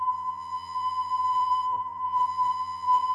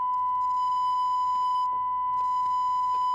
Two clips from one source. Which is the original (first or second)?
second